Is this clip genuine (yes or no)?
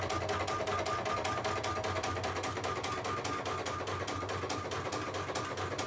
yes